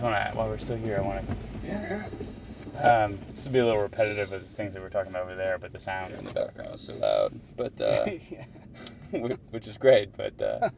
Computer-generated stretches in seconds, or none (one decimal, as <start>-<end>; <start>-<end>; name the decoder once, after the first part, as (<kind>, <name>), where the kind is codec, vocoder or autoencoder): 1.6-2.9 (codec, SNAC); 6.4-7.0